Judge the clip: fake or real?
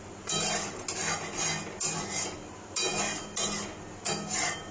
real